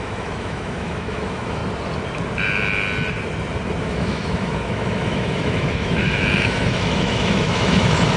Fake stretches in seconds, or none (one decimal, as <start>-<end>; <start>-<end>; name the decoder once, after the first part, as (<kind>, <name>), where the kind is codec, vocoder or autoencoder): 0.0-1.6 (autoencoder, DAC-VAE); 3.8-8.2